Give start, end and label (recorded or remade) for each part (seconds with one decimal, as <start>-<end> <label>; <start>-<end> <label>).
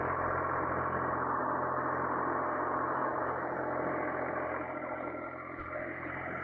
0.0-6.4 recorded